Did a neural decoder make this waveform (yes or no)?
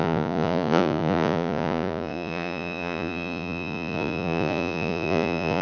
yes